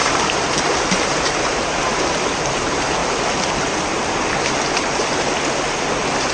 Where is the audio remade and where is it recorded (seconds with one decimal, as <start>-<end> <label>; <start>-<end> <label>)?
0.0-3.0 remade; 3.0-6.3 recorded